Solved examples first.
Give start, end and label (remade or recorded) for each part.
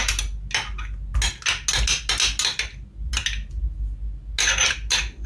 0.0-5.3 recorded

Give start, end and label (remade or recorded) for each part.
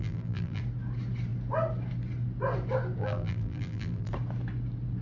0.0-0.6 remade; 0.6-3.0 recorded; 3.0-4.1 remade; 4.1-5.0 recorded